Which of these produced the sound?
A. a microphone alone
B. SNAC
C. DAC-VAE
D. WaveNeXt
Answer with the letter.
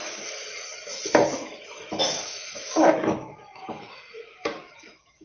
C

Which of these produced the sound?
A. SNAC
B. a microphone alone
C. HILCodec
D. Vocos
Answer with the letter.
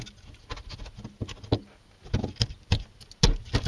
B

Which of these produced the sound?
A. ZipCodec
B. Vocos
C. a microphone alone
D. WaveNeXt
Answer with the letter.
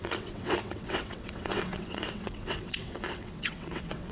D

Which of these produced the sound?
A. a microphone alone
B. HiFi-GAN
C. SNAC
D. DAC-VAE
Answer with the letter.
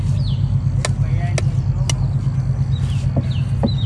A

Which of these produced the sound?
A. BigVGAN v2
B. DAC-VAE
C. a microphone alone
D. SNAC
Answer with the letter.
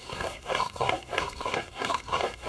D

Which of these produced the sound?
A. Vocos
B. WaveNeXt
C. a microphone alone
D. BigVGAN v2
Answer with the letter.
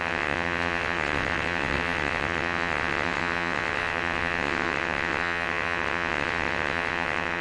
B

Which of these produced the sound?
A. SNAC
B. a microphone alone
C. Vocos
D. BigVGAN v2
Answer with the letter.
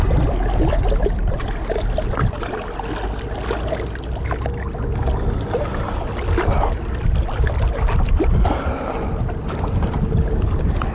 B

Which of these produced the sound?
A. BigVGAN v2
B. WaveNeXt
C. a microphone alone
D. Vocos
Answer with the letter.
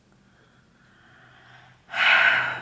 C